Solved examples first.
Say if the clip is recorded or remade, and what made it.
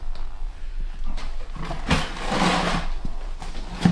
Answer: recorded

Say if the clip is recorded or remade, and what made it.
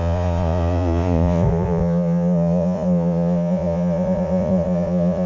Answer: remade, vocoder, Vocos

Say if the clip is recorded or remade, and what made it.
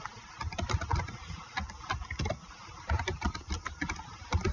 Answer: remade, vocoder, BigVGAN v2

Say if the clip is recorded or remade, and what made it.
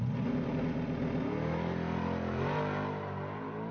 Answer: recorded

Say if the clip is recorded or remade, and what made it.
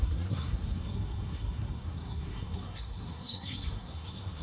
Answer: remade, codec, SNAC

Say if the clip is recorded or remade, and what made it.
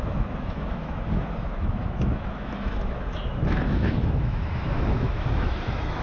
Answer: remade, autoencoder, DAC-VAE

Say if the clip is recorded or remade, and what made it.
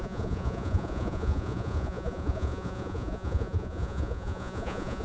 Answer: remade, vocoder, Vocos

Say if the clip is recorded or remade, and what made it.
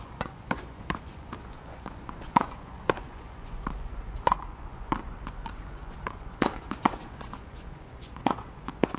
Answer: remade, vocoder, Vocos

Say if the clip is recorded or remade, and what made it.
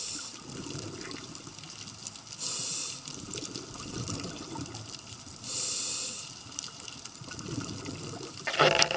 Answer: recorded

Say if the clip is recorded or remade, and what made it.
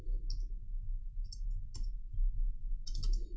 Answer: recorded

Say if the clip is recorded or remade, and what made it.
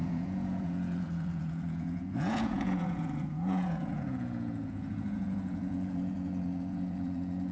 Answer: remade, vocoder, Vocos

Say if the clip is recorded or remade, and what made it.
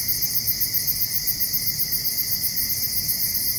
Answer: recorded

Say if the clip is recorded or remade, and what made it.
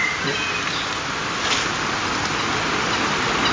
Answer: recorded